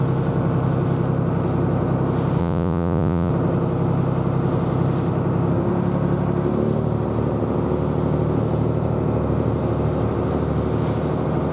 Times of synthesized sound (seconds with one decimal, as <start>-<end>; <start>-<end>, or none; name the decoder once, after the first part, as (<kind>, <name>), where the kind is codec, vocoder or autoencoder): 2.4-3.3 (vocoder, Vocos)